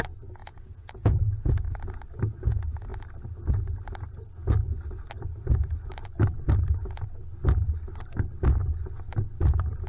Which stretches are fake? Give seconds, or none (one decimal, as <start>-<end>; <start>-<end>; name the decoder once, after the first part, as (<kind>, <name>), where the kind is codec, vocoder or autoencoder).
0.4-1.5 (vocoder, Vocos)